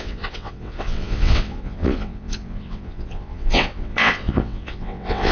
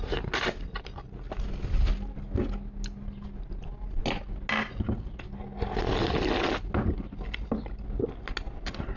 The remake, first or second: first